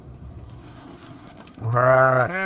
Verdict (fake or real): fake